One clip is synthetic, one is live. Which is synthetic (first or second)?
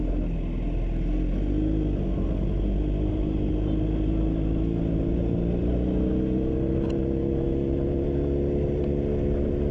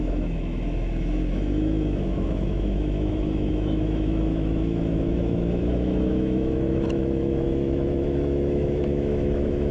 second